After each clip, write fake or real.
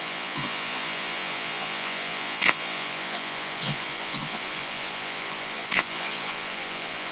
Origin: fake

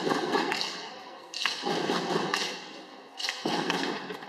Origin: fake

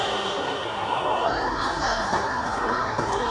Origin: fake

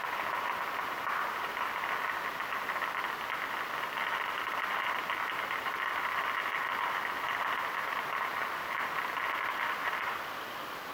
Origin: real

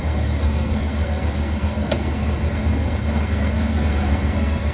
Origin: fake